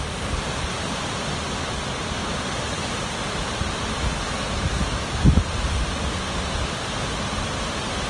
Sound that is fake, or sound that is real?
real